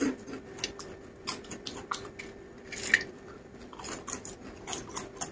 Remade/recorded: recorded